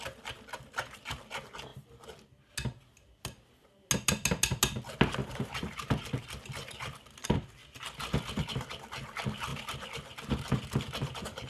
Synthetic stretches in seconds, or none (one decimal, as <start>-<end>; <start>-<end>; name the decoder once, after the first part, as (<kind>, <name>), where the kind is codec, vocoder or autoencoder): none